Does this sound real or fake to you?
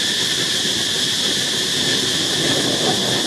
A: real